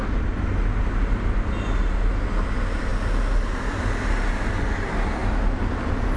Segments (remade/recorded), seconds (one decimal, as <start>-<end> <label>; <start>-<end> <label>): 0.0-6.2 recorded